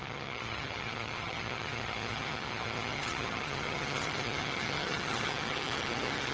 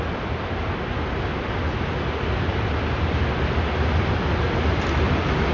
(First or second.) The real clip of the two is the second